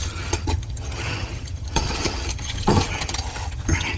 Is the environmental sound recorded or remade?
remade